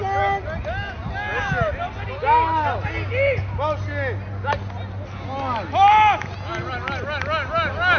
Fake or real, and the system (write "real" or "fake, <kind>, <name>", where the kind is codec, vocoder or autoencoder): real